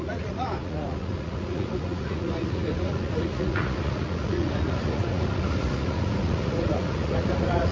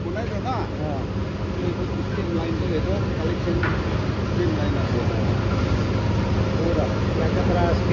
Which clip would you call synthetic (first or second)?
first